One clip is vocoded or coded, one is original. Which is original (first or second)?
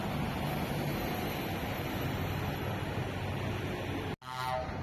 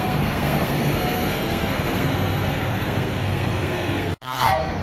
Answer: first